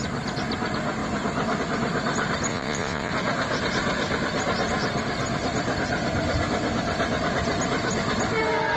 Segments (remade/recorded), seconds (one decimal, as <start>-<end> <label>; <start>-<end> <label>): 0.0-2.5 recorded; 2.5-3.1 remade; 3.1-8.8 recorded